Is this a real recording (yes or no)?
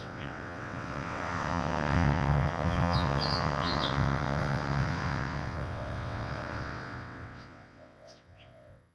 no